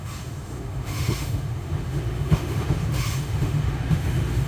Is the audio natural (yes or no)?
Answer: no